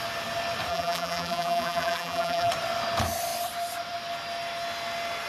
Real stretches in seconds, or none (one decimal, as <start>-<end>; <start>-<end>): 0.0-0.7; 2.5-5.3